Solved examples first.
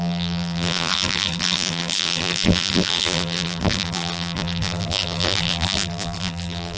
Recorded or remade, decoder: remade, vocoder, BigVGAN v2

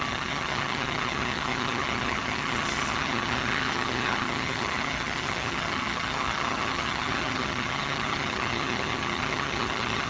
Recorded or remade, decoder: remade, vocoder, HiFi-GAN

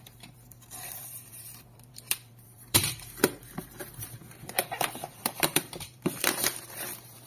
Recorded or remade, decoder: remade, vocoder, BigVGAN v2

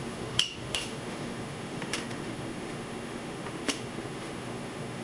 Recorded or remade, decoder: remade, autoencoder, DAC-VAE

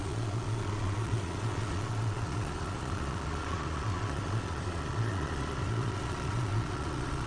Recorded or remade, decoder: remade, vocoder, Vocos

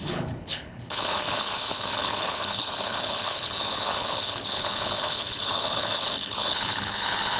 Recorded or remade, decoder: remade, codec, HILCodec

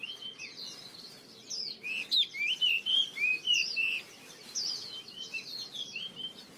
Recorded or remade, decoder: remade, vocoder, BigVGAN v2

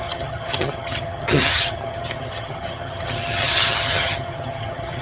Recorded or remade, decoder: remade, vocoder, HiFi-GAN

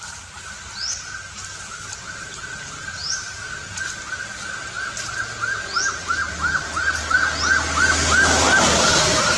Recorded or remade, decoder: recorded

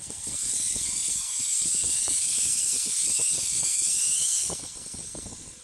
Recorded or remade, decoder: remade, codec, SNAC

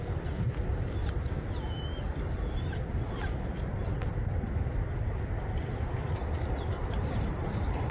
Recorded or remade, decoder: remade, vocoder, BigVGAN v2